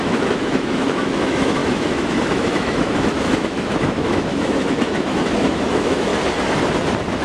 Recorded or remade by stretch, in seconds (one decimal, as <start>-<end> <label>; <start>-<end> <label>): 0.0-6.1 remade; 6.1-7.2 recorded